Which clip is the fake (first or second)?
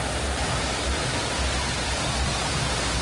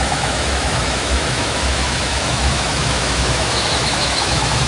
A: second